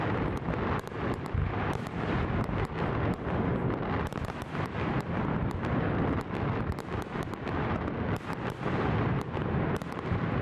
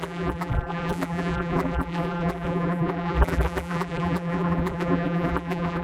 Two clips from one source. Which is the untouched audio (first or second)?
first